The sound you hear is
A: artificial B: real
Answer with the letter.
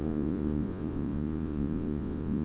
A